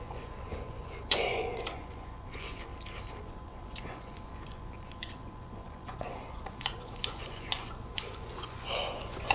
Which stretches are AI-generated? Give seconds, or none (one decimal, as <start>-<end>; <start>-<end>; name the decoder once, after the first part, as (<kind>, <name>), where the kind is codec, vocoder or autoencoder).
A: 0.0-2.7 (vocoder, Vocos); 3.2-9.3